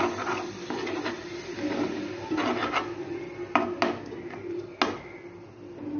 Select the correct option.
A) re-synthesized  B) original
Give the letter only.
B